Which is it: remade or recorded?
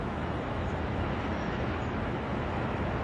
remade